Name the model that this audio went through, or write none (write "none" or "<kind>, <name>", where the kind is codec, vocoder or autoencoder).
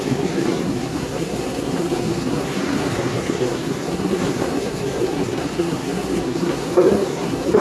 codec, SNAC